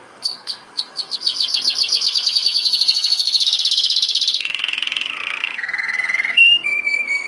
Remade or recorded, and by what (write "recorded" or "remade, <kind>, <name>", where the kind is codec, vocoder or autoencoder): remade, codec, SNAC